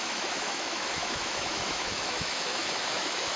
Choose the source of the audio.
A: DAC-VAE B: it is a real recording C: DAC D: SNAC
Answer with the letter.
A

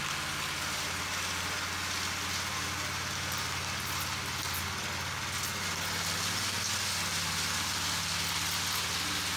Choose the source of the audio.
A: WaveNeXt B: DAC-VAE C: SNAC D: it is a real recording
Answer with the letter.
D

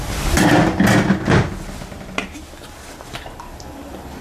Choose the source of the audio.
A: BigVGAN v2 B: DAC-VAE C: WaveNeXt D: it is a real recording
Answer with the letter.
D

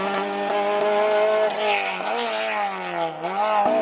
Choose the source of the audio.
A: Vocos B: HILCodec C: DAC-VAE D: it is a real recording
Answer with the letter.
D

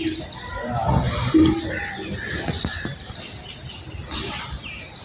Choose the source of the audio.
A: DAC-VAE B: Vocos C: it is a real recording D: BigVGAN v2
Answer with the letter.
C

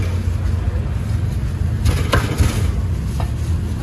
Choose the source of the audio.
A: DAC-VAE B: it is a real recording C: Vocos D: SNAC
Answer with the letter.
B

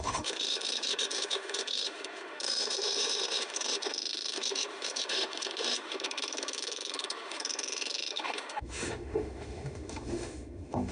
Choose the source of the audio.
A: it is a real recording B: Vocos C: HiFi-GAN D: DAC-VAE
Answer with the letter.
D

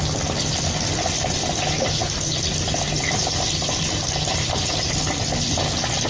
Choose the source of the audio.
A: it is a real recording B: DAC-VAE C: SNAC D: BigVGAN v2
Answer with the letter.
A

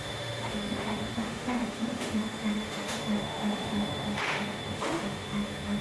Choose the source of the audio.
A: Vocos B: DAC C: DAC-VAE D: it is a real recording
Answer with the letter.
C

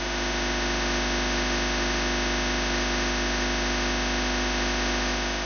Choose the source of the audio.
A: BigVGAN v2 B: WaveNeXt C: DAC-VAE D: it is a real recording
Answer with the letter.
C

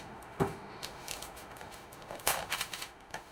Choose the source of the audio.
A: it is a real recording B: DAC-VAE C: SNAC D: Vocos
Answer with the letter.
B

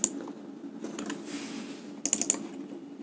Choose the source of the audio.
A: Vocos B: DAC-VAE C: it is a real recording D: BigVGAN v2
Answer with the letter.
C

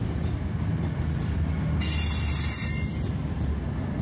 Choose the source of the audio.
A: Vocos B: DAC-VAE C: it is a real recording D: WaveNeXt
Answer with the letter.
C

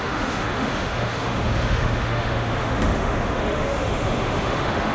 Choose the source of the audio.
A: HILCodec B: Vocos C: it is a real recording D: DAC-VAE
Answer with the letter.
D